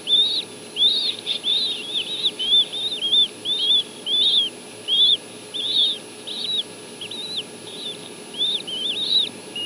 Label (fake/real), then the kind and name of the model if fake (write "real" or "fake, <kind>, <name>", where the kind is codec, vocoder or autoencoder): real